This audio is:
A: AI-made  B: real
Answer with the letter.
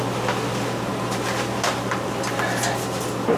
B